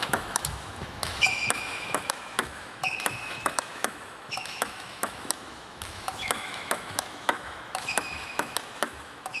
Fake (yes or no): yes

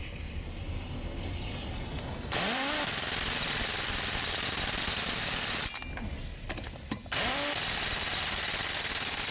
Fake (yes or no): no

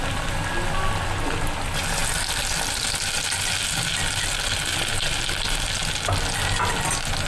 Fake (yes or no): no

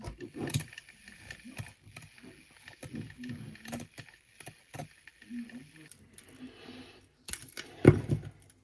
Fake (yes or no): no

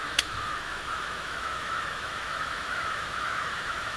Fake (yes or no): yes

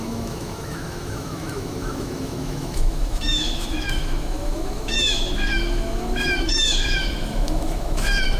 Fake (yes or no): yes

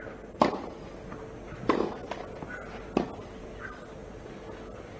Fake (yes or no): no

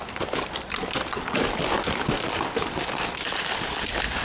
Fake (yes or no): no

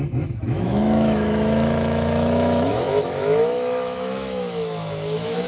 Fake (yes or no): yes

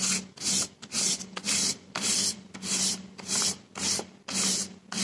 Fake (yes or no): no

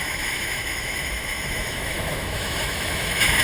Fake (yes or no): yes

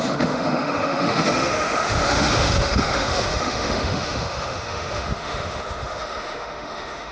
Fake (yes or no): yes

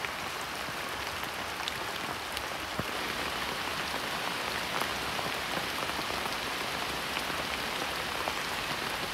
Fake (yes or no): no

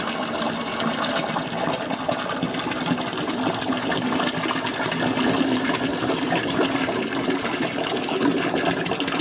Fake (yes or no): no